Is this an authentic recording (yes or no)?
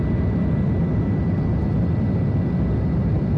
yes